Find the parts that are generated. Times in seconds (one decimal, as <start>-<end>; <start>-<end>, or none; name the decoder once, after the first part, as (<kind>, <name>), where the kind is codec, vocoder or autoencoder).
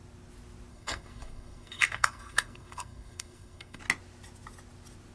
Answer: 0.7-3.8 (codec, SNAC)